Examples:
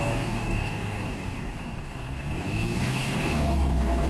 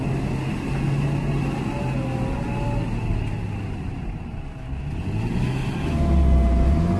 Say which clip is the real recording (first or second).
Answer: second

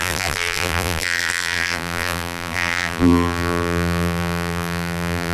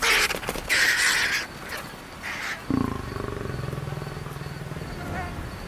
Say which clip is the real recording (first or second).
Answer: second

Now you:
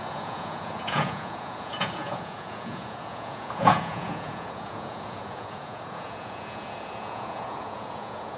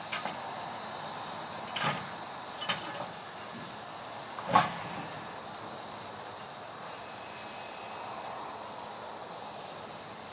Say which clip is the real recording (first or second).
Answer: second